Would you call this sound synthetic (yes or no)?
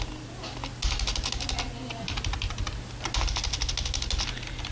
no